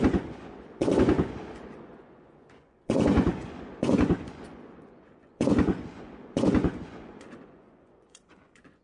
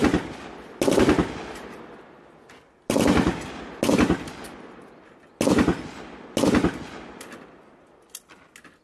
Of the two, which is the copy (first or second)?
first